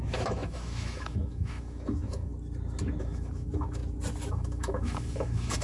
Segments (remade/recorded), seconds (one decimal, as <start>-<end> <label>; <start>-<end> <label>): 0.0-2.3 remade; 2.3-3.0 recorded; 3.0-3.8 remade; 3.8-4.3 recorded; 4.3-5.6 remade

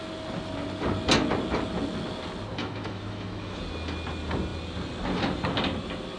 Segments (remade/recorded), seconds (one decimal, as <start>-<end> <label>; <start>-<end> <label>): 0.0-2.6 recorded; 2.6-3.6 remade; 3.6-6.2 recorded

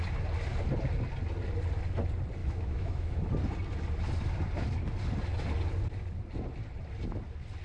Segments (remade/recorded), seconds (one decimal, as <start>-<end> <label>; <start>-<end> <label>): 0.0-2.4 recorded; 2.4-3.3 remade; 3.3-7.6 recorded